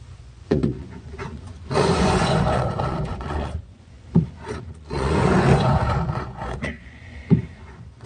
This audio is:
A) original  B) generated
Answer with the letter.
B